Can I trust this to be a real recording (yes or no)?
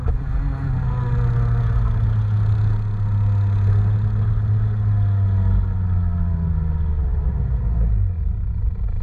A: yes